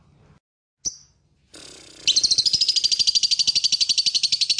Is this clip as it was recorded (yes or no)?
yes